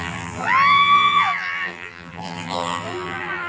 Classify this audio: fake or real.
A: fake